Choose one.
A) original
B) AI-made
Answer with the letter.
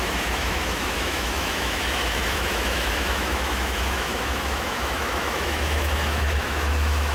B